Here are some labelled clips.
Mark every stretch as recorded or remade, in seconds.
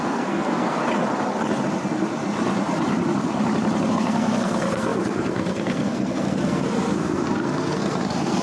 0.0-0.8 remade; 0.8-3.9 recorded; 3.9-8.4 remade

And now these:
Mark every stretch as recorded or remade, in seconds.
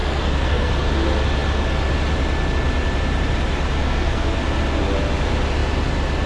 0.0-0.7 remade; 0.7-3.8 recorded; 3.8-4.4 remade; 4.4-6.3 recorded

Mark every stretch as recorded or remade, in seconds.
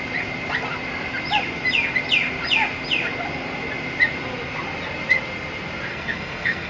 0.0-5.9 recorded; 5.9-6.7 remade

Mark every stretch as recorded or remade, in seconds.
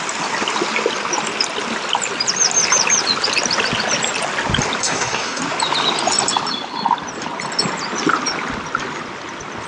0.0-4.8 recorded; 4.8-5.4 remade; 5.4-9.7 recorded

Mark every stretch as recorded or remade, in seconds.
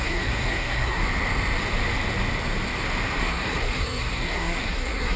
0.0-1.0 remade; 1.0-3.2 recorded; 3.2-5.2 remade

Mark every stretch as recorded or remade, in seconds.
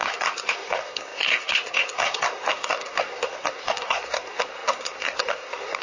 0.0-5.8 remade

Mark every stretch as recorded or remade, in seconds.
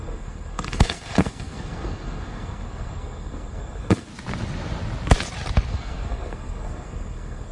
0.0-4.1 remade; 4.1-5.7 recorded; 5.7-7.5 remade